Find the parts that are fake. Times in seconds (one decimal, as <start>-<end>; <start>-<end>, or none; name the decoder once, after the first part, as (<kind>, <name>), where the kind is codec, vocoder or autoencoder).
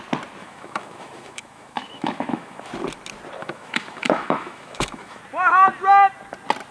0.4-2.7 (autoencoder, DAC-VAE); 3.4-5.2